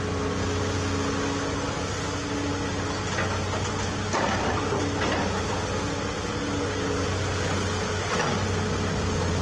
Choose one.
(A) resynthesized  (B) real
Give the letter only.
B